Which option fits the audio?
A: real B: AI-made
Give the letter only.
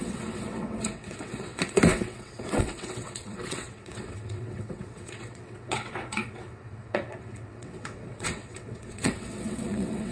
B